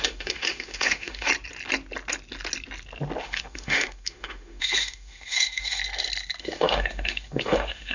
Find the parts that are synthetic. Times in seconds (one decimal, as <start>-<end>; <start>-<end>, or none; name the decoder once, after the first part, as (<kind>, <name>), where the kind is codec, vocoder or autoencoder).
0.0-1.3 (autoencoder, DAC-VAE); 3.2-5.8; 6.4-7.9